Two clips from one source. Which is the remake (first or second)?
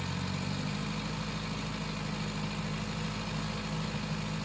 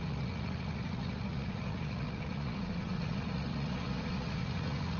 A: second